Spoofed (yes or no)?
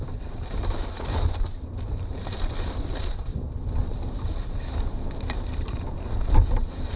no